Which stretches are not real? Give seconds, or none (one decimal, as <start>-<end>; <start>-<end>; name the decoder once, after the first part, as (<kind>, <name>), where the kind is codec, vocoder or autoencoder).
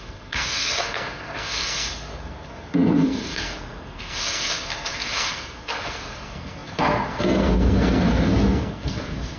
0.0-9.4 (codec, SNAC)